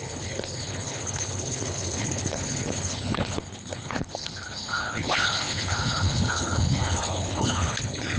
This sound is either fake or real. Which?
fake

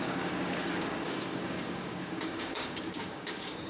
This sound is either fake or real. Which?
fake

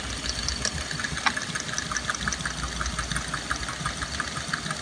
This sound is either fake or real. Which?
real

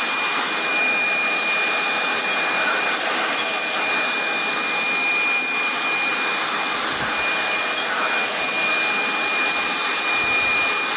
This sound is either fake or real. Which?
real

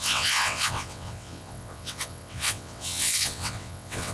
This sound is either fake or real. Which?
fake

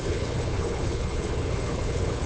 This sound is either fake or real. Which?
fake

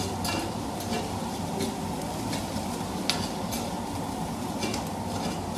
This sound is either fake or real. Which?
real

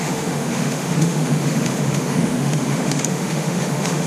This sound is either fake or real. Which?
fake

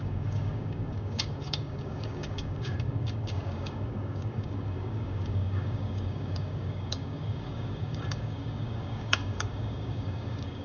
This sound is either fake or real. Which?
fake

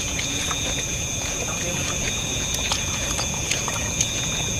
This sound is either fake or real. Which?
fake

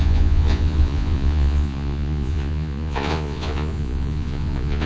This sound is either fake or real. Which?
fake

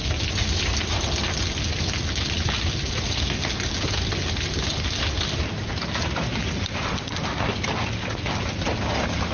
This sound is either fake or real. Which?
real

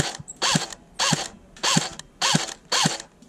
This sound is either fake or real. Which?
real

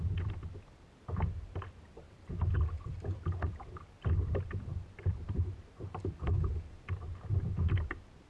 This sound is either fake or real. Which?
real